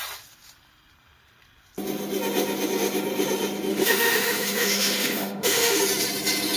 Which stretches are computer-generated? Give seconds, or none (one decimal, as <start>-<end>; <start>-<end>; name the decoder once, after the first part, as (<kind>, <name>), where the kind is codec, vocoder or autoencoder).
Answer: 3.7-5.8 (autoencoder, DAC-VAE)